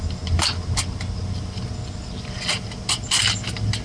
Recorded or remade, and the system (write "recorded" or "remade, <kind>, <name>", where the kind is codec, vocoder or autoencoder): recorded